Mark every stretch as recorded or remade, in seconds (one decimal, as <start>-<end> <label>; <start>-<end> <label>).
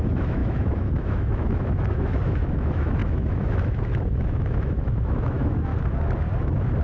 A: 0.0-5.7 remade; 5.7-6.8 recorded